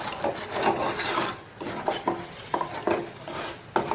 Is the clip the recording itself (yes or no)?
yes